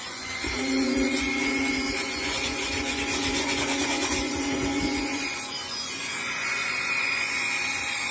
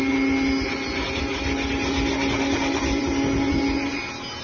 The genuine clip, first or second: second